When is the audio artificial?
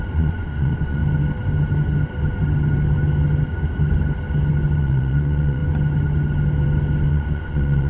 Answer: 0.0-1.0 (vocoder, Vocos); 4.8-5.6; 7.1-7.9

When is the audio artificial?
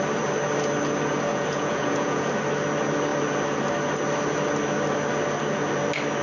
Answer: 1.3-2.3 (vocoder, Vocos)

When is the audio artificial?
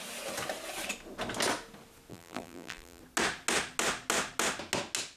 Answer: 2.1-3.0 (vocoder, BigVGAN v2)